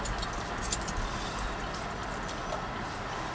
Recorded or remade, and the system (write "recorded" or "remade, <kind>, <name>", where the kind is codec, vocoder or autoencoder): recorded